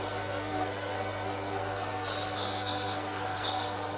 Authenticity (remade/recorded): remade